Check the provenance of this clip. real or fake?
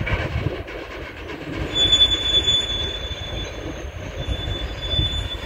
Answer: fake